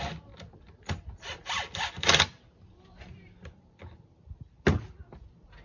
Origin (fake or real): real